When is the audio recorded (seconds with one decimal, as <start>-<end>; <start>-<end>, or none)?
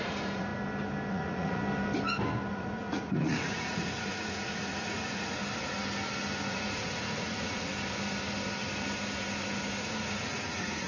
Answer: 0.5-1.1; 1.6-2.5; 5.4-6.5; 7.7-9.8